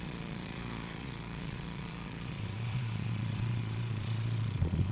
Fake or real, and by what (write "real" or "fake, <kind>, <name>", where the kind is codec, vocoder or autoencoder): fake, vocoder, Vocos